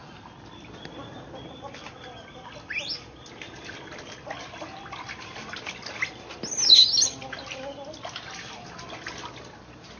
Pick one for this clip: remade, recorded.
recorded